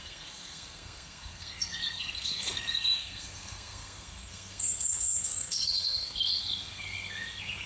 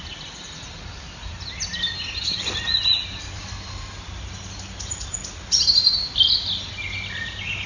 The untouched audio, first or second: second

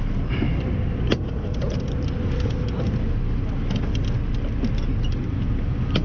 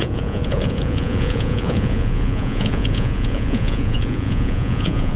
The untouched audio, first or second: first